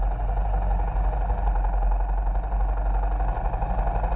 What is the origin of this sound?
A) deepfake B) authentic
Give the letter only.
B